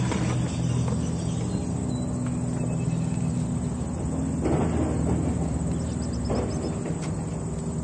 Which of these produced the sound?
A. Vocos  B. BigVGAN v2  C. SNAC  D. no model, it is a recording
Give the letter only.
D